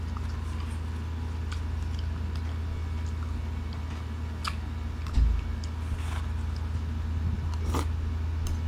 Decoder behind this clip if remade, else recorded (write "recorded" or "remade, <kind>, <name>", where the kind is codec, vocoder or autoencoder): recorded